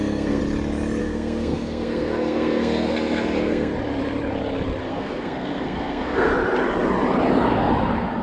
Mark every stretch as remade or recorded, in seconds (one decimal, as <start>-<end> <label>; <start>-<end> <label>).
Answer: 0.0-0.4 remade; 0.4-1.0 recorded; 1.0-3.7 remade; 3.7-4.8 recorded; 4.8-6.3 remade; 6.3-8.2 recorded